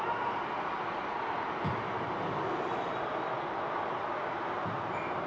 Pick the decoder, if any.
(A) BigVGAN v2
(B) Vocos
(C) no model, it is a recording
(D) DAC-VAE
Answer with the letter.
A